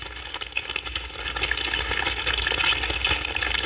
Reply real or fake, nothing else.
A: real